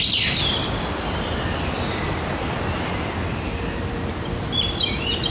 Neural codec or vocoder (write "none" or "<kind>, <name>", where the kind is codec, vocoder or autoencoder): none